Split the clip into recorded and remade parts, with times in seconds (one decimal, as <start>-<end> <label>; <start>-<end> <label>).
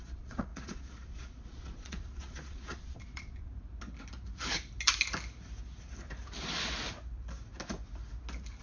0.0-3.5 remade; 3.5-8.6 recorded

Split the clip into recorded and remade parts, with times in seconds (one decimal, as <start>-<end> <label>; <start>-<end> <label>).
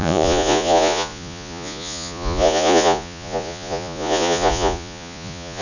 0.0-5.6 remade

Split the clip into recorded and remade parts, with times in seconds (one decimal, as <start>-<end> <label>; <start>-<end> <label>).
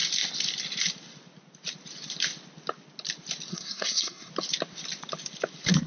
0.0-3.5 recorded; 3.5-4.3 remade; 4.3-5.9 recorded